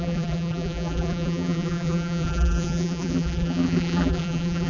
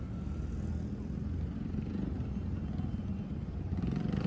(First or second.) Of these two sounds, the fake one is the first